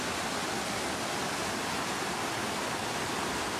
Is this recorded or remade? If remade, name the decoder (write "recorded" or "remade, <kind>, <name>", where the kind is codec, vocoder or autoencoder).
recorded